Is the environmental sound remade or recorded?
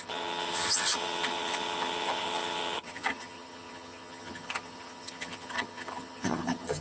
remade